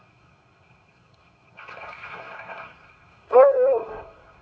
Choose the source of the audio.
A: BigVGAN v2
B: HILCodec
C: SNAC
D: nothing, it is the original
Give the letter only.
C